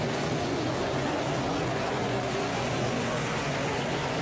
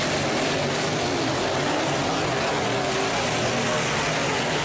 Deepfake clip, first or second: first